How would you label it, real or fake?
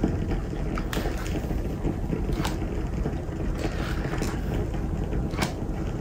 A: real